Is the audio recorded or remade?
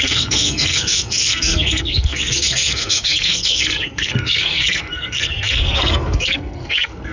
remade